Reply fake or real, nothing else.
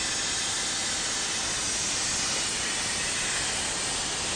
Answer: real